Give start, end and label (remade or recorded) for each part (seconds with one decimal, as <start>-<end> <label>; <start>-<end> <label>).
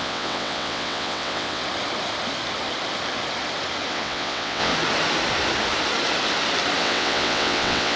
0.0-1.6 remade; 1.6-3.9 recorded; 3.9-4.7 remade; 4.7-6.8 recorded; 6.8-8.0 remade